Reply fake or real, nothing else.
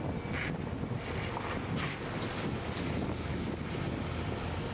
real